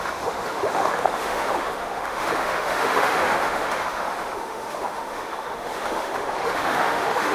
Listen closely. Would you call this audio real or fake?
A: fake